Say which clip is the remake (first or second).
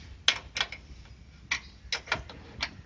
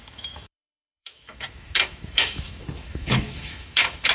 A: second